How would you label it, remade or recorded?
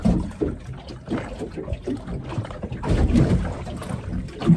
recorded